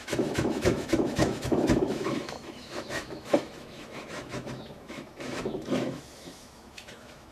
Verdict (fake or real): fake